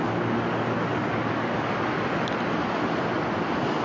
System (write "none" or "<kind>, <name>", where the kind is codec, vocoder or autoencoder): none